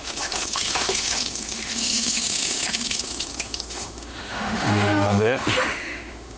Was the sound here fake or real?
fake